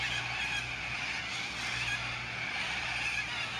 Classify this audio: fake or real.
real